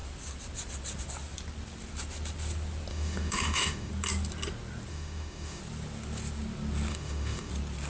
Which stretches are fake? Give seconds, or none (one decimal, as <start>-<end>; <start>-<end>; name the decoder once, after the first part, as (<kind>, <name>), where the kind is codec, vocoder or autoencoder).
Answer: 2.9-3.9 (autoencoder, DAC-VAE); 4.9-5.6; 6.9-7.5